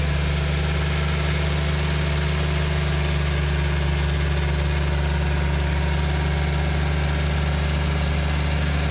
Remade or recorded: recorded